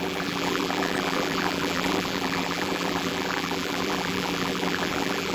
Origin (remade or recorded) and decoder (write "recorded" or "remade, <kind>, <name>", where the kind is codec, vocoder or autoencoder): remade, vocoder, BigVGAN v2